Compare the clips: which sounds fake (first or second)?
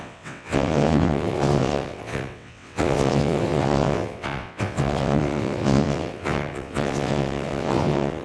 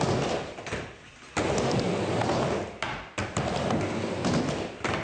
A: first